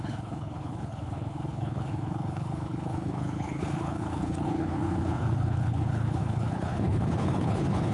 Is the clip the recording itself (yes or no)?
no